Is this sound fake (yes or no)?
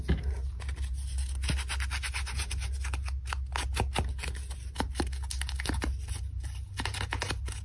no